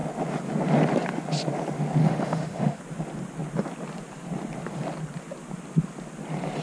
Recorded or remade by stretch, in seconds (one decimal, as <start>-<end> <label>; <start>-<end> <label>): 0.0-2.0 recorded; 2.0-2.8 remade; 2.8-6.6 recorded

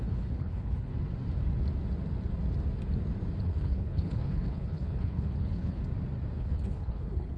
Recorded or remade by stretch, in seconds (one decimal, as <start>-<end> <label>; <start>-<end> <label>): 0.0-0.9 remade; 0.9-3.4 recorded; 3.4-5.8 remade; 5.8-6.4 recorded; 6.4-7.4 remade

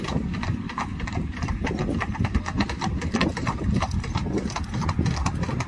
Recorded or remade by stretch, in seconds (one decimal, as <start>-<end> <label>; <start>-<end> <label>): 0.0-4.2 remade; 4.2-5.7 recorded

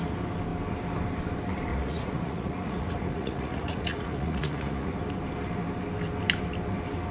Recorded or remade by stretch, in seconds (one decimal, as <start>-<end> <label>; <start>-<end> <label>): 0.0-1.7 recorded; 1.7-4.9 remade; 4.9-7.1 recorded

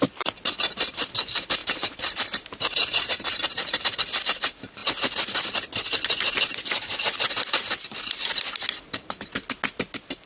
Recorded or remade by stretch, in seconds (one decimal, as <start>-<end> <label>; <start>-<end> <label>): 0.0-1.6 recorded; 1.6-3.8 remade; 3.8-10.3 recorded